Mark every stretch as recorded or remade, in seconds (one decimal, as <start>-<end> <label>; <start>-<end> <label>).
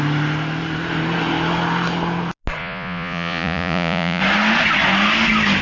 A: 0.0-2.6 recorded; 2.6-4.2 remade; 4.2-5.6 recorded